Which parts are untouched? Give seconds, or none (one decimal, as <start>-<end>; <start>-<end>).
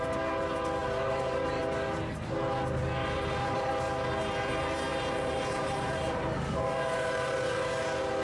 0.0-0.8; 1.6-3.0; 3.7-4.9; 7.7-8.2